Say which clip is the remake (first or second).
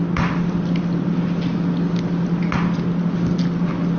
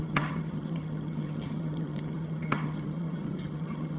second